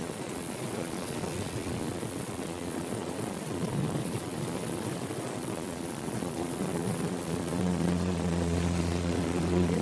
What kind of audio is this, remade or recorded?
remade